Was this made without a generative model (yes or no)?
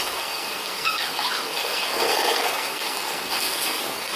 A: no